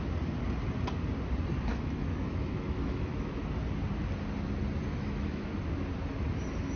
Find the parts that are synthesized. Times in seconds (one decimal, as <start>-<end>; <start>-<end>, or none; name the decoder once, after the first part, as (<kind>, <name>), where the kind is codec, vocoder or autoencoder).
1.7-3.4 (autoencoder, DAC-VAE); 4.9-5.5